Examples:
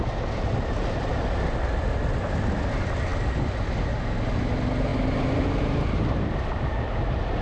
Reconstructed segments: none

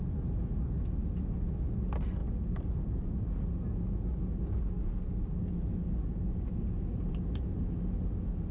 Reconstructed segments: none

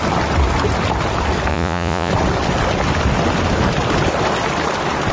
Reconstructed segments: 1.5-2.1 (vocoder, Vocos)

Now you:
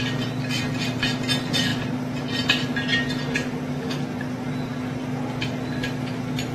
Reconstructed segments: none

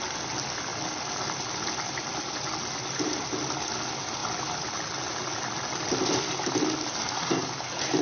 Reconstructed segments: none

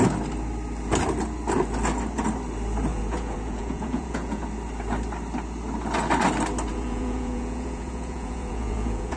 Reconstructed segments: 2.9-4.4 (vocoder, Vocos); 6.7-9.2

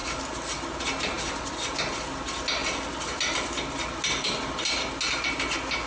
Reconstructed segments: none

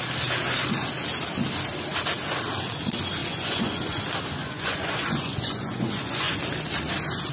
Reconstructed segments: 3.2-4.0 (vocoder, Vocos); 4.4-6.4